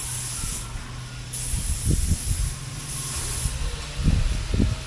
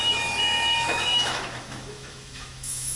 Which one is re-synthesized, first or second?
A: second